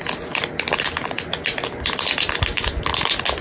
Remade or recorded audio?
recorded